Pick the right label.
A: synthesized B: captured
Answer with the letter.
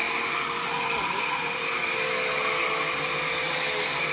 B